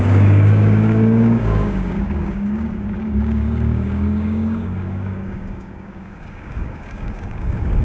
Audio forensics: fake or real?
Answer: fake